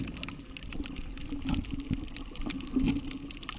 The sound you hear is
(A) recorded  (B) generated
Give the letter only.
A